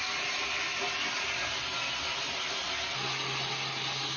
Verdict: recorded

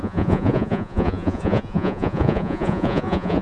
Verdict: remade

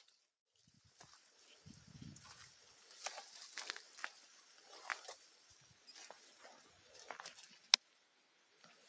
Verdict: recorded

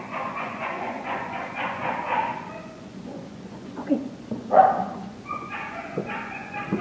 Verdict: remade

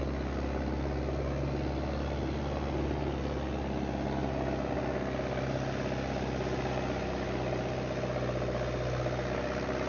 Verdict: recorded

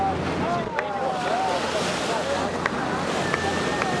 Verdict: recorded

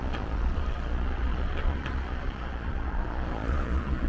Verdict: remade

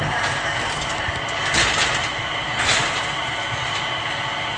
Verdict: recorded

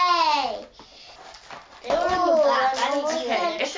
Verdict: recorded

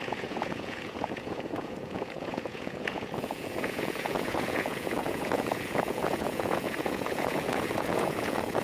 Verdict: remade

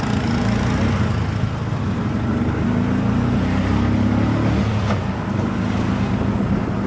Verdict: recorded